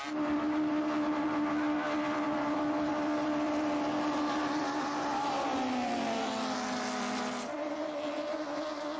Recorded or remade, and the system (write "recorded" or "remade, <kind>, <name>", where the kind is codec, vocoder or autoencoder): recorded